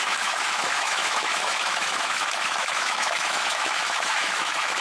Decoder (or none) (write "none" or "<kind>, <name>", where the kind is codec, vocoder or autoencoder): autoencoder, DAC-VAE